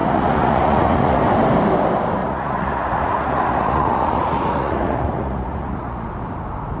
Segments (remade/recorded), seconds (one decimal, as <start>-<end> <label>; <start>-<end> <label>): 0.0-1.2 remade; 1.2-2.2 recorded; 2.2-6.1 remade; 6.1-6.8 recorded